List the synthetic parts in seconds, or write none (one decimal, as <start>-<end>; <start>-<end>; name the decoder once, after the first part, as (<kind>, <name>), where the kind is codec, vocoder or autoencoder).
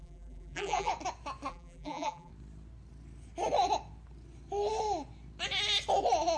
0.0-0.9 (vocoder, BigVGAN v2); 1.5-2.3